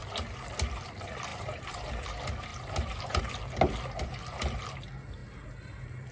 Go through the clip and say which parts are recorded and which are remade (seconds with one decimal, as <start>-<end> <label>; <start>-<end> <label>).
0.0-1.3 recorded; 1.3-1.9 remade; 1.9-2.5 recorded; 2.5-3.2 remade; 3.2-5.2 recorded; 5.2-6.1 remade